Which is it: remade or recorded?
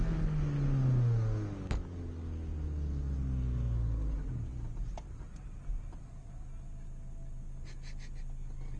recorded